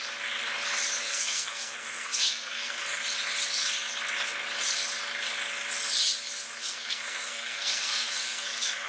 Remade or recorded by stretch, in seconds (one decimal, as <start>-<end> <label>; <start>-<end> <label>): 0.0-1.0 recorded; 1.0-3.0 remade; 3.0-6.6 recorded; 6.6-8.9 remade

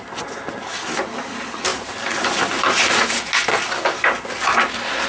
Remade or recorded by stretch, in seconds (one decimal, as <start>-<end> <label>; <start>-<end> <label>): 0.0-5.1 recorded

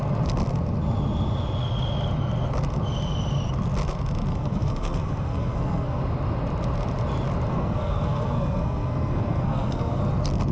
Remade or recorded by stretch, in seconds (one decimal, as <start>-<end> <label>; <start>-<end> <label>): 0.0-4.3 recorded; 4.3-6.0 remade; 6.0-7.5 recorded; 7.5-10.0 remade; 10.0-10.5 recorded

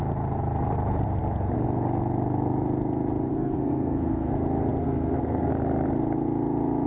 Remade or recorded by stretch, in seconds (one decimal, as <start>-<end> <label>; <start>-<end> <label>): 0.0-3.3 recorded; 3.3-4.3 remade; 4.3-4.8 recorded; 4.8-5.5 remade; 5.5-6.9 recorded

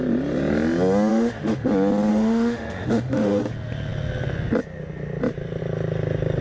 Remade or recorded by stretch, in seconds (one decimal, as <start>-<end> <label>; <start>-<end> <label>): 0.0-1.1 recorded; 1.1-1.7 remade; 1.7-2.1 recorded; 2.1-3.5 remade; 3.5-6.4 recorded

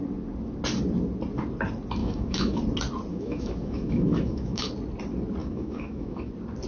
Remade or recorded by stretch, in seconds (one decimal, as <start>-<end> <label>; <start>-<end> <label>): 0.0-2.0 recorded; 2.0-2.6 remade; 2.6-3.1 recorded; 3.1-4.7 remade; 4.7-5.4 recorded; 5.4-6.3 remade; 6.3-6.7 recorded

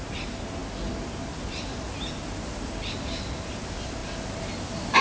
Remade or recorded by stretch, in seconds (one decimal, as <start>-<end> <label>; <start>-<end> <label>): 0.0-5.0 recorded